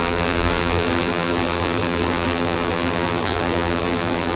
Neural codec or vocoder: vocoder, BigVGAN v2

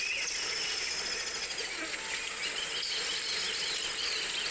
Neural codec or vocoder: none